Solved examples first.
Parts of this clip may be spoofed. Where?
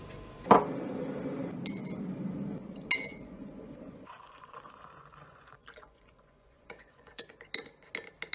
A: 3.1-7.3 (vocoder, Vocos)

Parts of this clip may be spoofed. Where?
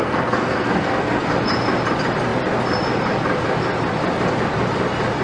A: 0.0-1.3 (codec, SNAC)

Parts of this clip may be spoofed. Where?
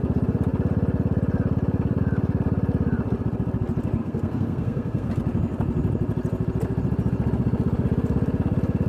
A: 4.0-5.1 (codec, SNAC)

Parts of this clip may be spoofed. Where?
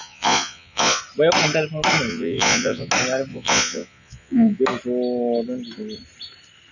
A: 0.0-1.0 (vocoder, Vocos); 2.1-2.9; 3.3-4.6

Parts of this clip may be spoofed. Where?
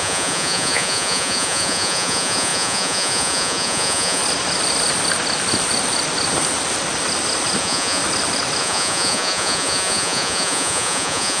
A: 0.0-4.2 (vocoder, Vocos); 7.6-8.0; 8.6-11.4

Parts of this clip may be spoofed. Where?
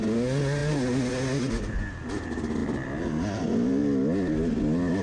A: none